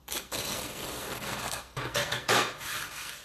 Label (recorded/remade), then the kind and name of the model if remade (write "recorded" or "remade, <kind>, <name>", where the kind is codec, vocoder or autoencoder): remade, codec, SNAC